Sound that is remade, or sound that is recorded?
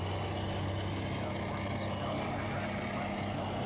recorded